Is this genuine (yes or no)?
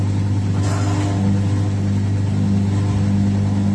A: yes